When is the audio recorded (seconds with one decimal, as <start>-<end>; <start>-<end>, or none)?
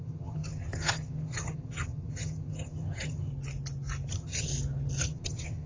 3.3-4.1; 4.5-5.0